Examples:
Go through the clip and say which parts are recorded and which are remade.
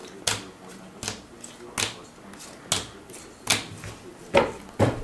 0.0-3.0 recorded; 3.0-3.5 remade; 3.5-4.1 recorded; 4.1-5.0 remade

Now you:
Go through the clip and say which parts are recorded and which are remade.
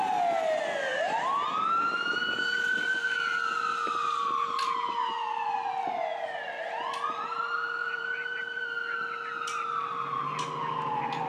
0.0-0.9 recorded; 0.9-1.7 remade; 1.7-7.8 recorded; 7.8-8.6 remade; 8.6-11.3 recorded